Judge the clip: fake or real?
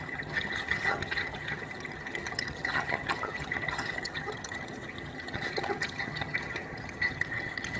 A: fake